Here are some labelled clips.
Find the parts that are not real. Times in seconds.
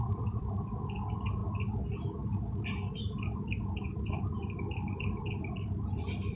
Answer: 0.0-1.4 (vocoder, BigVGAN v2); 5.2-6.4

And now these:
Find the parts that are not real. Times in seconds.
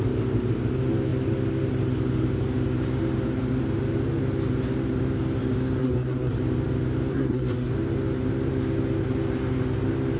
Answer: 5.8-6.3 (codec, SNAC); 7.1-7.7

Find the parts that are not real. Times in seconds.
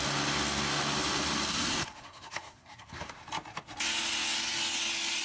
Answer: 1.5-3.1 (codec, SNAC)